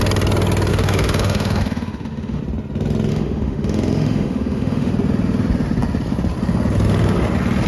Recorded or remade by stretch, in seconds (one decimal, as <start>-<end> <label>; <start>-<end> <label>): 0.0-0.7 recorded; 0.7-2.4 remade; 2.4-3.1 recorded; 3.1-4.9 remade; 4.9-7.7 recorded